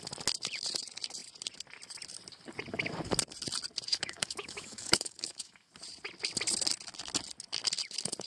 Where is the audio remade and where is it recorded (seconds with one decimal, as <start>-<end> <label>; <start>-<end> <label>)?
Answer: 0.0-3.9 recorded; 3.9-5.7 remade; 5.7-8.3 recorded